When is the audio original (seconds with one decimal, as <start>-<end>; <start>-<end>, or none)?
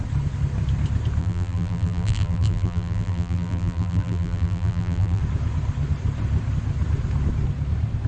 0.0-1.2; 5.2-8.1